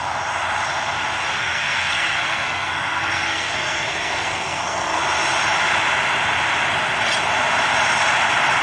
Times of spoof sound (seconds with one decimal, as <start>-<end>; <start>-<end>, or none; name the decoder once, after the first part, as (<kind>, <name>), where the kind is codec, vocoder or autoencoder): 1.4-5.0 (codec, SNAC)